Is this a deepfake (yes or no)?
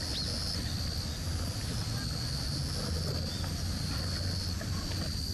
no